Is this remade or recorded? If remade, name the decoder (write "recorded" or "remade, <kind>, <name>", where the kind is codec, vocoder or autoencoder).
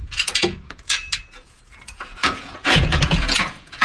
remade, vocoder, Vocos